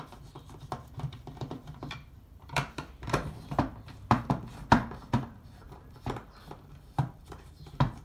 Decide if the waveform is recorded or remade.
remade